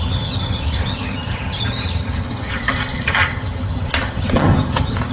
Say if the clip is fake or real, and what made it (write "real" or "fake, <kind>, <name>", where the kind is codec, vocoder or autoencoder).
fake, vocoder, HiFi-GAN